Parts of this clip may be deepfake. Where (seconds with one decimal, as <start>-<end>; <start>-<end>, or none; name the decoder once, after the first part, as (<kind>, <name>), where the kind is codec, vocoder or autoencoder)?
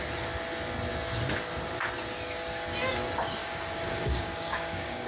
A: 3.4-5.1 (codec, DAC)